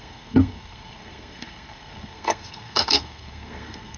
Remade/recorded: remade